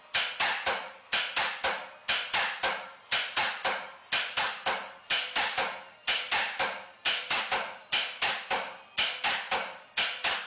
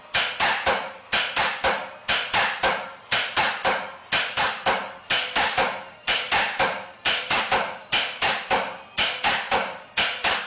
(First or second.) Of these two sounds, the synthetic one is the second